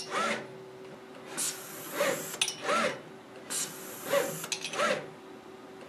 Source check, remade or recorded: recorded